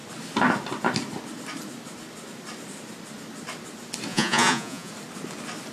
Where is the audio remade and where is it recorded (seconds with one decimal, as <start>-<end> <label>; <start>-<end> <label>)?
0.0-4.1 recorded; 4.1-4.9 remade; 4.9-5.7 recorded